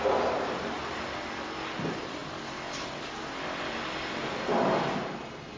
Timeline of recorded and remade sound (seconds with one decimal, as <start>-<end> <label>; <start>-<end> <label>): 0.0-5.6 recorded